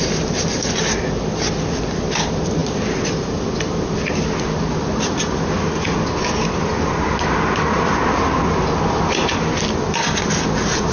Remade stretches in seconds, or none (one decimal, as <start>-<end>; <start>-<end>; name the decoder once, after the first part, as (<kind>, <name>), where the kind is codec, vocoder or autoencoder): none